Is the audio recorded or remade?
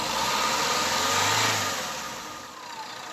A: recorded